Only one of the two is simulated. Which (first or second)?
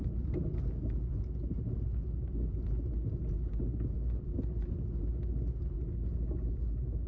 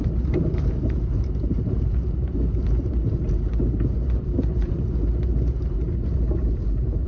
second